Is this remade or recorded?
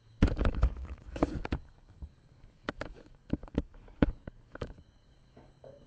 remade